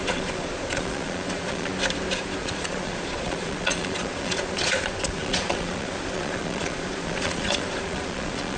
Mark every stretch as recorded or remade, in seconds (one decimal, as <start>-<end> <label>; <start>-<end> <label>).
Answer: 0.0-1.7 remade; 1.7-2.4 recorded; 2.4-8.6 remade